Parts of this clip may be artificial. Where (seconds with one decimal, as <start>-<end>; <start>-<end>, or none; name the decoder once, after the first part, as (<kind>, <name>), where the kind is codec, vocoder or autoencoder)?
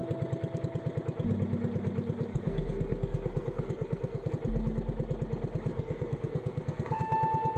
2.3-4.3 (codec, SNAC); 5.7-7.0